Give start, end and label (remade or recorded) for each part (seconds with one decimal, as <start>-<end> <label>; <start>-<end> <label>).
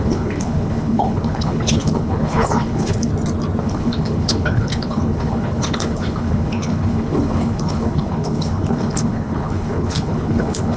0.0-3.1 remade; 3.1-3.6 recorded; 3.6-10.8 remade